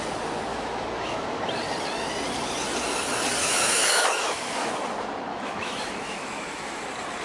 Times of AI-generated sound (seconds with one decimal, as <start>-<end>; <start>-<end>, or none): 0.5-1.4; 3.4-4.7; 5.3-6.8